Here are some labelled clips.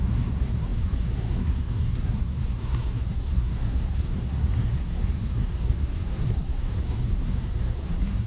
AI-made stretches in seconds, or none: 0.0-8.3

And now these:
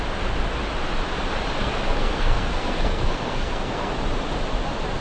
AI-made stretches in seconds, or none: 1.6-3.9

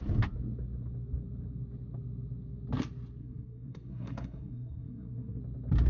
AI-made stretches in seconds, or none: 3.2-5.4

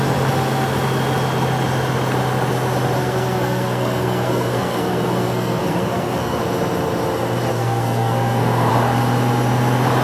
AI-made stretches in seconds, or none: 3.0-6.4; 7.5-8.7

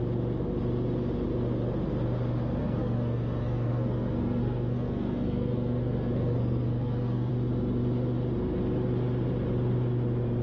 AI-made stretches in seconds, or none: 2.6-7.3

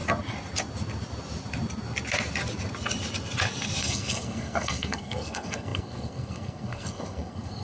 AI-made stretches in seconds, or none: 3.8-7.6

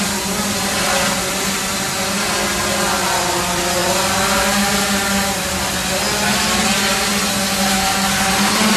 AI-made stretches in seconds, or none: 7.7-8.3

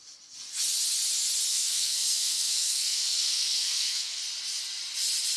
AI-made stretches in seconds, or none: 1.5-4.2